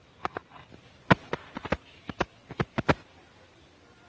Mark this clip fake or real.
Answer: real